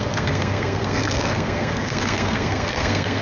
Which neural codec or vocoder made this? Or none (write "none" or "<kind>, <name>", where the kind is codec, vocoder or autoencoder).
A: codec, SNAC